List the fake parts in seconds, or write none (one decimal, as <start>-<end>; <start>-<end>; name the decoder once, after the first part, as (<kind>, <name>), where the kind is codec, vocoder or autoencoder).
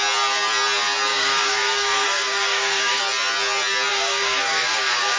1.1-3.0 (codec, DAC); 3.9-5.2